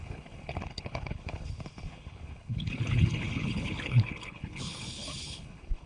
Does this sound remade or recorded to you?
remade